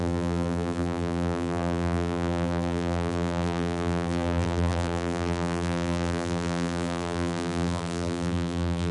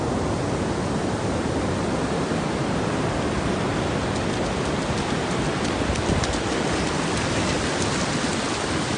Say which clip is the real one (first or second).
second